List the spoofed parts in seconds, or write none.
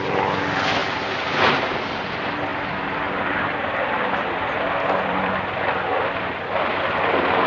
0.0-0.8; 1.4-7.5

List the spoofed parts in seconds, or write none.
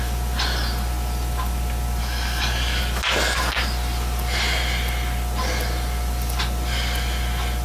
2.0-2.8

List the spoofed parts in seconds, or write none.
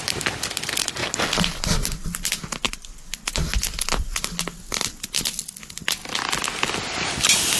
none